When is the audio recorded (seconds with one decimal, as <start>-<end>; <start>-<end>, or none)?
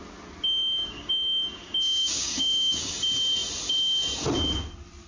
0.0-0.6; 2.9-5.1